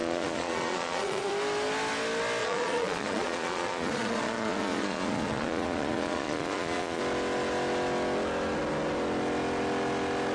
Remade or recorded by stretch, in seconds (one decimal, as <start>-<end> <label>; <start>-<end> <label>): 0.0-1.3 remade; 1.3-2.4 recorded; 2.4-7.0 remade; 7.0-10.3 recorded